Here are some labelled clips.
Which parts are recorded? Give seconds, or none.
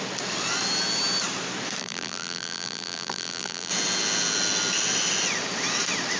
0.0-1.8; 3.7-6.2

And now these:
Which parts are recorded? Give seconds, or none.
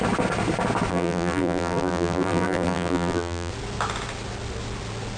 0.0-0.9; 3.5-5.2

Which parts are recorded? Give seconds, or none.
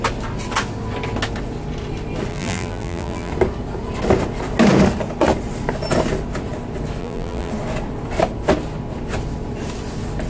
0.0-2.3; 3.3-7.0; 7.5-10.3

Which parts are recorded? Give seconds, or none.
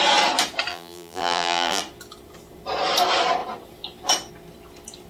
0.0-0.7; 1.8-5.1